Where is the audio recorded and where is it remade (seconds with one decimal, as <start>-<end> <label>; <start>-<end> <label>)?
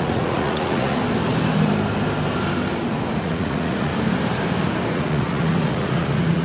0.0-1.0 remade; 1.0-3.2 recorded; 3.2-3.9 remade; 3.9-4.9 recorded; 4.9-6.4 remade